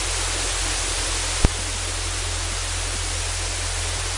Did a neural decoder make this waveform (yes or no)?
no